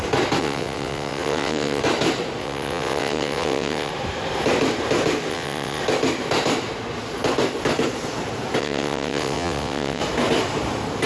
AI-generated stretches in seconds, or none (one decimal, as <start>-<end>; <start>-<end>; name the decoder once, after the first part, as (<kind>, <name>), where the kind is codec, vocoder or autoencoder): 0.4-1.8 (vocoder, WaveNeXt); 2.4-3.9; 5.3-5.8; 8.6-10.0